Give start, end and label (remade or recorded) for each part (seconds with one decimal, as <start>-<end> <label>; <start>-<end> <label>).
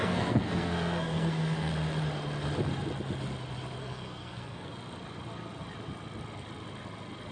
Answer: 0.0-1.7 remade; 1.7-3.8 recorded; 3.8-4.7 remade; 4.7-7.3 recorded